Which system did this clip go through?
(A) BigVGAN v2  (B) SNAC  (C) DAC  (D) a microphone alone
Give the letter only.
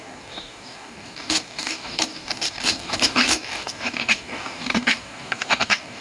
C